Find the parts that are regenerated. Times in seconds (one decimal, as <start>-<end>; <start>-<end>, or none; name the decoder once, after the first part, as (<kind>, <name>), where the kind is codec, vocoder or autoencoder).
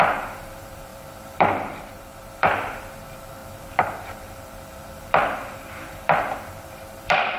0.0-7.4 (vocoder, BigVGAN v2)